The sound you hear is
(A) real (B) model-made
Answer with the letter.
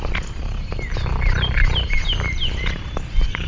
A